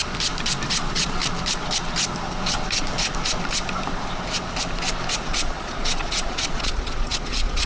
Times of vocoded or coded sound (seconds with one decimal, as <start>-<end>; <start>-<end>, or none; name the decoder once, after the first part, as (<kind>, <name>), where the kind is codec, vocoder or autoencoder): 0.7-1.2 (vocoder, Vocos); 5.1-7.7